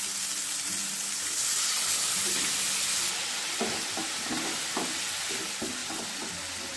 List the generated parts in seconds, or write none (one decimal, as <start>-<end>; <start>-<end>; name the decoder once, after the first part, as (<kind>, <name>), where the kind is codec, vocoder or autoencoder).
none